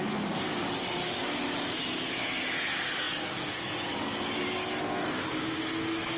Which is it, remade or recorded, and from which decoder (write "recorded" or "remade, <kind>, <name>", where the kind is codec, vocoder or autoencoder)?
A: recorded